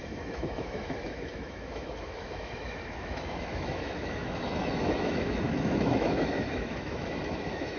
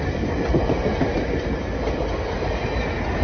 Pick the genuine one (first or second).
second